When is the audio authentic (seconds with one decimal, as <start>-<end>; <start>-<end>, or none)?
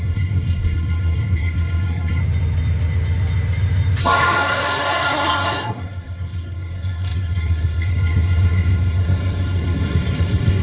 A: 2.2-4.0